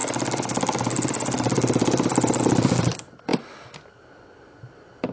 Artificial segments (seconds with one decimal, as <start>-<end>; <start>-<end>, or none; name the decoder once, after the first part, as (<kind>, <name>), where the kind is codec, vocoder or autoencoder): none